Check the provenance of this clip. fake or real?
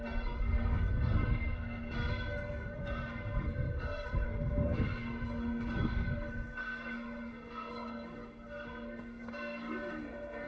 fake